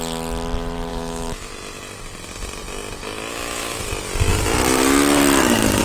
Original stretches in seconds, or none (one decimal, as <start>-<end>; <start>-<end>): 0.0-0.9; 1.5-3.3; 3.9-5.8